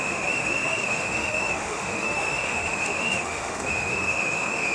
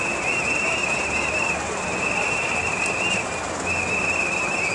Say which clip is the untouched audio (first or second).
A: second